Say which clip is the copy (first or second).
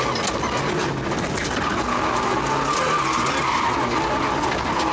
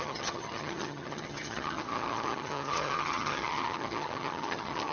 second